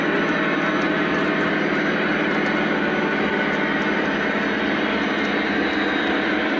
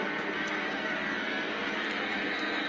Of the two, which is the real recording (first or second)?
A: first